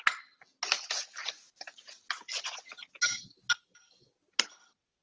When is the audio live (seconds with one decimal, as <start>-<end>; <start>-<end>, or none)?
0.0-5.0